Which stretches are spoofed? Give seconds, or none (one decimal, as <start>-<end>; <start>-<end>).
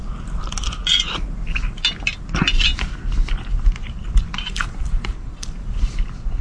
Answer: 3.8-6.4